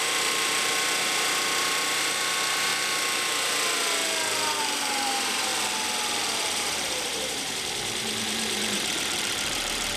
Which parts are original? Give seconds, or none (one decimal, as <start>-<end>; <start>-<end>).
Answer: 2.7-4.6; 5.5-6.6